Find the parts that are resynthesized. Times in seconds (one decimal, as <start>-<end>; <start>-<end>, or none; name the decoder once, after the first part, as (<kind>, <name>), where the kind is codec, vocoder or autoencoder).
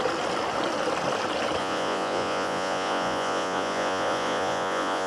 1.6-5.1 (vocoder, Vocos)